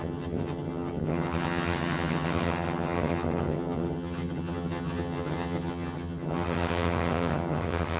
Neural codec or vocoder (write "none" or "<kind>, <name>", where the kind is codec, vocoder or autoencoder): vocoder, HiFi-GAN